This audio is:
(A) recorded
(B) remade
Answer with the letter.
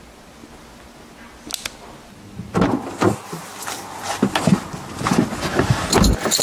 A